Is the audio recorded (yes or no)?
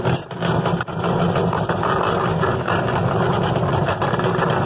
yes